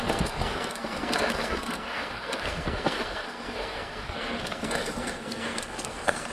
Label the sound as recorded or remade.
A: remade